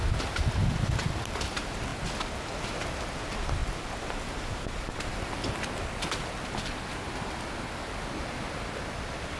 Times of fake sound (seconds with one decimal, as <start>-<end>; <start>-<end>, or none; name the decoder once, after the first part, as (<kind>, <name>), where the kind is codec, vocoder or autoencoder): 0.6-1.4 (vocoder, BigVGAN v2); 3.6-5.3